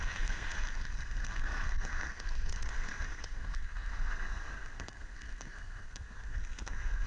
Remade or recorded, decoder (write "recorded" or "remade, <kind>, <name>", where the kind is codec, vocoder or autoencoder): remade, codec, SNAC